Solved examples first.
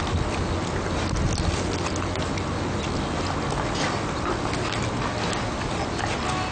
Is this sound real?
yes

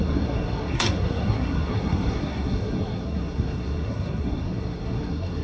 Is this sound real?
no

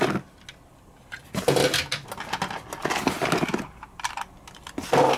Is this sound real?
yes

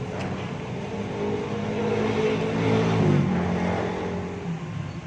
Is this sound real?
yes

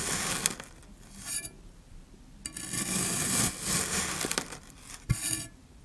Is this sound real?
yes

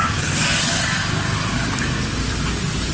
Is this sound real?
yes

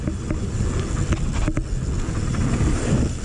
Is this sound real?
yes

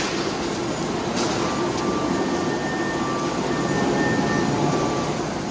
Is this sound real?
yes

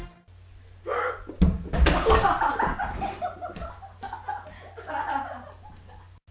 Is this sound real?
yes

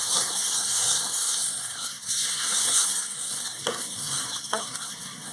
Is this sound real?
no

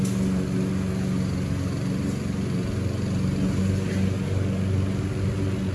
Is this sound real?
yes